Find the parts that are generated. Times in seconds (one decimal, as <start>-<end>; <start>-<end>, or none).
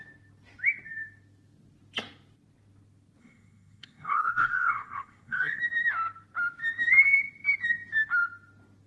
3.2-5.6